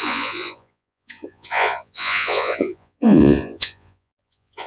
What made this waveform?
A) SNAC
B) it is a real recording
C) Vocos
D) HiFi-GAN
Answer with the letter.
C